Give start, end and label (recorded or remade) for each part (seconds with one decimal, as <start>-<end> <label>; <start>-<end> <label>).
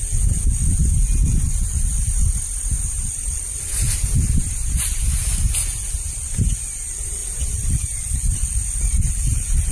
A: 0.0-9.7 recorded